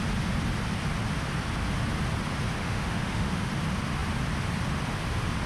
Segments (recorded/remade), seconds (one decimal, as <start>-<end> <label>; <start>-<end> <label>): 0.0-2.6 recorded; 2.6-3.5 remade; 3.5-5.5 recorded